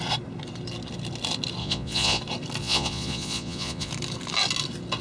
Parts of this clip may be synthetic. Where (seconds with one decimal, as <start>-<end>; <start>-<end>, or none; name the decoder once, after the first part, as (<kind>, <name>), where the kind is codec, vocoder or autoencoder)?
1.6-2.2 (vocoder, Vocos); 2.6-3.9